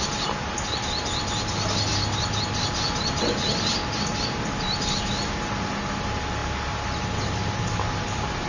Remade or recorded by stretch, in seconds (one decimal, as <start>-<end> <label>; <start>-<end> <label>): 0.0-8.5 recorded